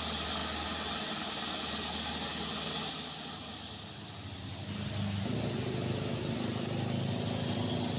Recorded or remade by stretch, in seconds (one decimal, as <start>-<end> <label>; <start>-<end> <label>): 0.0-8.0 recorded